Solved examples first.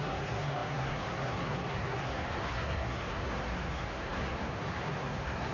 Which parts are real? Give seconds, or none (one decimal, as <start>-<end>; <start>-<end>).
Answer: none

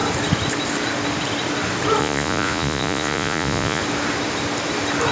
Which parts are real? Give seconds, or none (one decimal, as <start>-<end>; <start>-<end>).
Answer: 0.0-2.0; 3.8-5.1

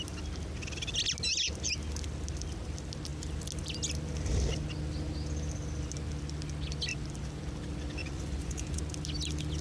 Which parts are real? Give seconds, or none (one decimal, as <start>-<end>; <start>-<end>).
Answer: 0.0-8.0; 8.8-9.6

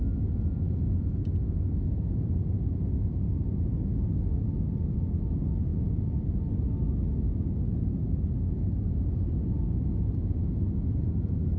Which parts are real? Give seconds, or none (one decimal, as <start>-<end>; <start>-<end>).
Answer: 0.0-11.6

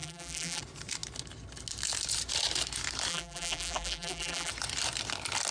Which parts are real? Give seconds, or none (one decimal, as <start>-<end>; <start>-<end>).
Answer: 0.6-3.1; 4.5-5.5

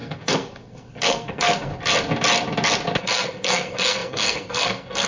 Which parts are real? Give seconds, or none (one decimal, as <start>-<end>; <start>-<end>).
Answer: 1.7-3.0